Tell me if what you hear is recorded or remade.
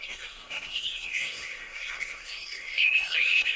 remade